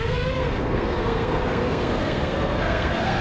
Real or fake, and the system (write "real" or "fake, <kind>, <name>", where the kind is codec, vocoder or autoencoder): fake, codec, SNAC